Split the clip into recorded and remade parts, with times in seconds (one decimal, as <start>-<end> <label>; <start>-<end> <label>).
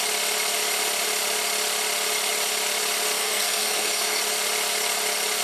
0.0-3.2 recorded; 3.2-4.2 remade; 4.2-5.4 recorded